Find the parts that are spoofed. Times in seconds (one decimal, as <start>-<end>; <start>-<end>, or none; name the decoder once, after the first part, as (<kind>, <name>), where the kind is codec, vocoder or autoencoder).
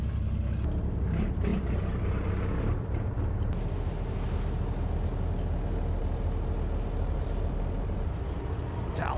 1.5-3.5 (vocoder, BigVGAN v2); 6.0-8.1